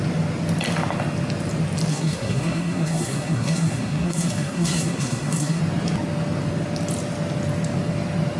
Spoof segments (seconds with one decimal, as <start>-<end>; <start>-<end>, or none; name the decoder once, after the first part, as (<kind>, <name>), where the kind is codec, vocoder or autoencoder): 1.9-5.6 (codec, SNAC)